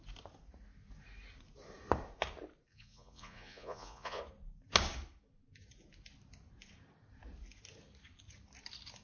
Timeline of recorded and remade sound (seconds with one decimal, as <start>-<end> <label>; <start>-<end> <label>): 0.0-2.7 recorded; 2.7-4.2 remade; 4.2-9.0 recorded